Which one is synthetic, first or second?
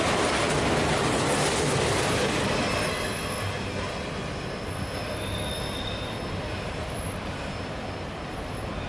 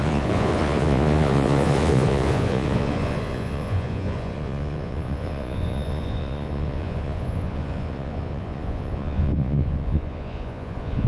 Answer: second